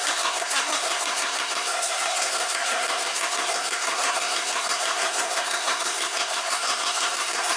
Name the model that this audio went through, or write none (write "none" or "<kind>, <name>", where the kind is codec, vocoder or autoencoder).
codec, SNAC